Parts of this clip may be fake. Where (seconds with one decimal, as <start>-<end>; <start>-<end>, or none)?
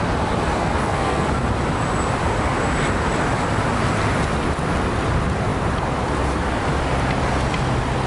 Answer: 0.6-1.3